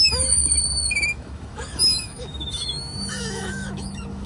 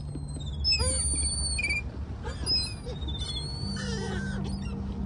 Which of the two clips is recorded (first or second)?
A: second